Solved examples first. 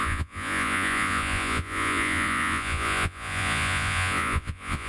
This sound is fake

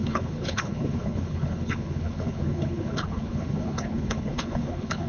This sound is fake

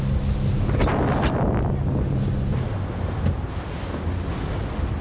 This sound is real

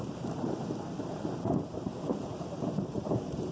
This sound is fake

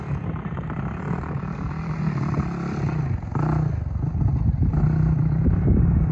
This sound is real